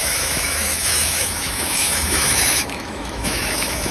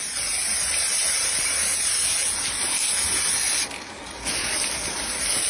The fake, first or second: first